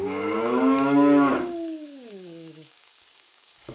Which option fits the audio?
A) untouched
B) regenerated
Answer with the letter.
B